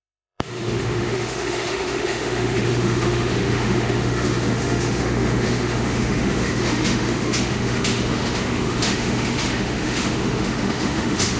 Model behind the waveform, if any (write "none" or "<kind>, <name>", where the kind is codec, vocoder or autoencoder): autoencoder, DAC-VAE